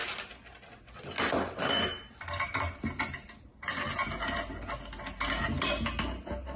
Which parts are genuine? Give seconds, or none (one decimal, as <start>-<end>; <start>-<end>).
0.0-6.6